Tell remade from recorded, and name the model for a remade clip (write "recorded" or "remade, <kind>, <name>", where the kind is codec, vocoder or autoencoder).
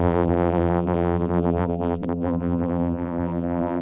remade, vocoder, BigVGAN v2